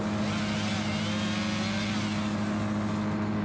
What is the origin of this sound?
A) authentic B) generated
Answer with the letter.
A